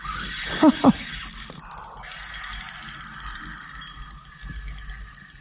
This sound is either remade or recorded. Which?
recorded